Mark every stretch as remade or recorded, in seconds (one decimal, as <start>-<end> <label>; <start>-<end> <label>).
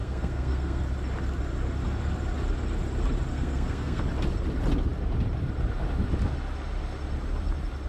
0.0-0.8 remade; 0.8-3.3 recorded; 3.3-4.0 remade; 4.0-7.9 recorded